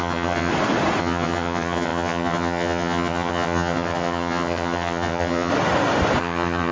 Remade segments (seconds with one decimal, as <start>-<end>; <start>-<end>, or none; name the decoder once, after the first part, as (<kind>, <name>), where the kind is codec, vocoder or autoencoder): 0.0-0.5 (vocoder, HiFi-GAN); 1.0-5.5; 6.2-6.7